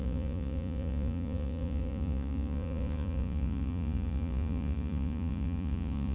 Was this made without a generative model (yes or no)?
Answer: no